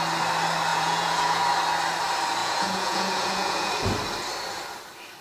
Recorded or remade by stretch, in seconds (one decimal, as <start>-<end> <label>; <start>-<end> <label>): 0.0-0.7 recorded; 0.7-1.4 remade; 1.4-2.4 recorded; 2.4-3.7 remade; 3.7-5.2 recorded